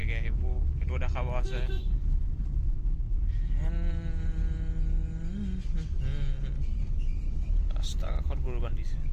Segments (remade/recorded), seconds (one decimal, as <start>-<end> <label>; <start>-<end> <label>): 0.0-0.9 remade; 0.9-2.1 recorded; 2.1-3.0 remade; 3.0-9.1 recorded